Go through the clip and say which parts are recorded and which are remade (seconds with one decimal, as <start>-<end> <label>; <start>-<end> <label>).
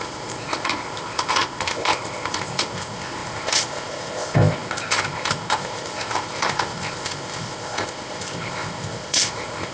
0.0-9.7 remade